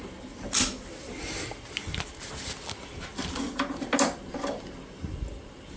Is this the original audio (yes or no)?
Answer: yes